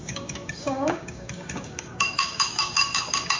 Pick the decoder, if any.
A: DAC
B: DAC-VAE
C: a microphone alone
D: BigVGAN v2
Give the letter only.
A